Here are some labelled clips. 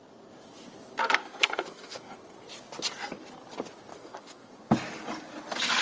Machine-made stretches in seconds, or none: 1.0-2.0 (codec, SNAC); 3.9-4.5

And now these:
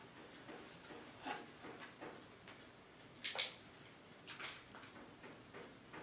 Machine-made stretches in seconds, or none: none

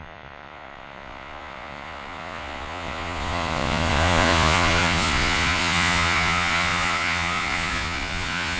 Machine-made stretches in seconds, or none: 0.0-8.6 (vocoder, Vocos)

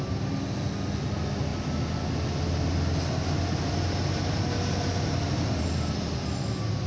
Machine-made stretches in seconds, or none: none